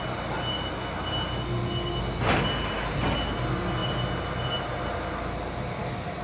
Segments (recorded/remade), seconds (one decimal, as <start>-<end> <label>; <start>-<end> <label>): 0.0-6.2 recorded